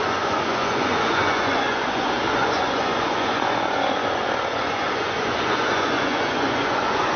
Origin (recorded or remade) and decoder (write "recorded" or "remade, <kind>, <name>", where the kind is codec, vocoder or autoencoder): remade, vocoder, Vocos